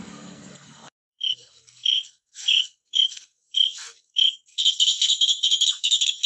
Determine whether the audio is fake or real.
fake